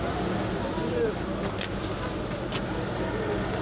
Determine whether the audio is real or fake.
real